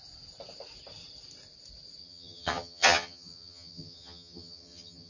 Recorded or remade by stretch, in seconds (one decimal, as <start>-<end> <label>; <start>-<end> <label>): 0.0-2.0 recorded; 2.0-5.1 remade